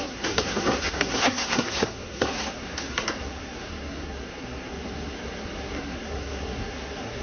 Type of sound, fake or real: fake